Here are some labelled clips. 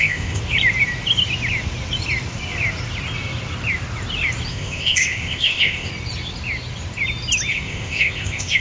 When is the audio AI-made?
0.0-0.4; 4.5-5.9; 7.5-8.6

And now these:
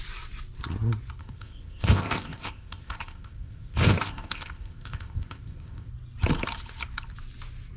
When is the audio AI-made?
1.2-5.9

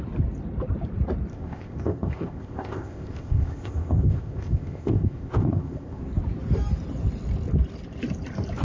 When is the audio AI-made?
1.3-6.0